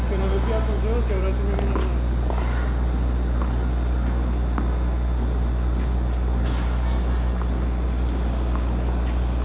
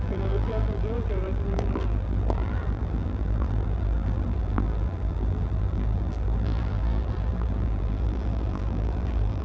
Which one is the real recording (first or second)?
first